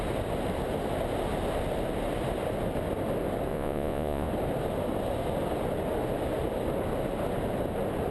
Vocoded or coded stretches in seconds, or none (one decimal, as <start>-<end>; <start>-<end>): 3.5-4.3